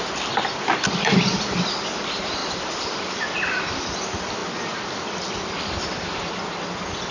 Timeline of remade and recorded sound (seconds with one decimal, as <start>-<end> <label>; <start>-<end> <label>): 0.0-4.4 recorded; 4.4-5.3 remade; 5.3-7.1 recorded